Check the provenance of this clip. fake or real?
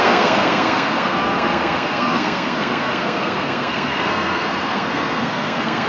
fake